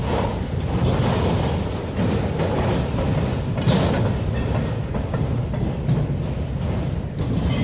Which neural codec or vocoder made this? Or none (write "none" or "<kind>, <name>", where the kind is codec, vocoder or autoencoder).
none